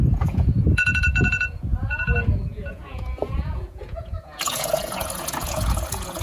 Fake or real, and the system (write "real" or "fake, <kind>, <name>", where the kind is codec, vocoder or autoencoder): fake, vocoder, Vocos